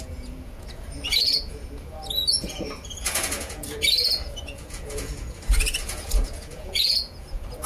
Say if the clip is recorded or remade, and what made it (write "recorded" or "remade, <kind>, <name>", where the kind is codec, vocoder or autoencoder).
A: remade, vocoder, Vocos